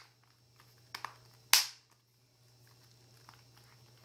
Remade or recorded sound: recorded